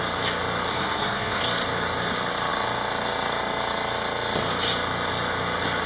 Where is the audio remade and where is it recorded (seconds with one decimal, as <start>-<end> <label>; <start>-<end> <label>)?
0.0-0.7 recorded; 0.7-1.4 remade; 1.4-5.9 recorded